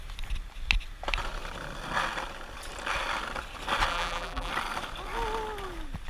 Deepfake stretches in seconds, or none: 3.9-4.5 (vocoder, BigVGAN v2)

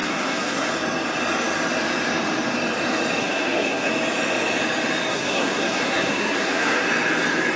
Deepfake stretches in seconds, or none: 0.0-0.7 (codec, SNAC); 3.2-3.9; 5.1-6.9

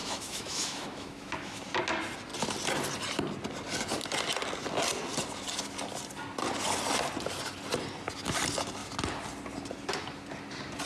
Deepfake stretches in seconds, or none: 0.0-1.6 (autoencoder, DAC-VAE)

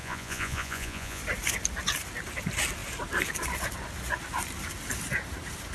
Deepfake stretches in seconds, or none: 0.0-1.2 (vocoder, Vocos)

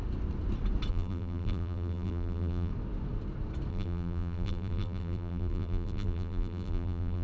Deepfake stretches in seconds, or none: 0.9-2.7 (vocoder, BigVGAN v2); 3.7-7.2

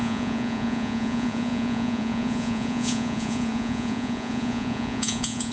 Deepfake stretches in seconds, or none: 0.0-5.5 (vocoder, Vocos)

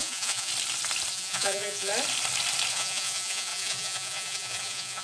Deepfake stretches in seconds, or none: 0.0-0.5 (vocoder, Vocos); 1.1-1.9; 2.7-5.0